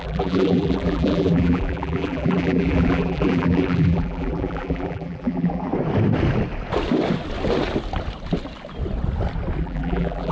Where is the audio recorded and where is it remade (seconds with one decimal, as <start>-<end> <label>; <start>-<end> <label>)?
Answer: 0.0-5.7 remade; 5.7-9.6 recorded; 9.6-10.3 remade